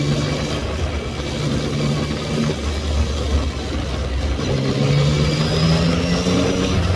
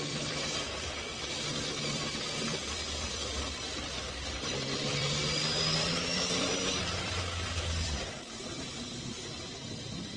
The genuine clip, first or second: first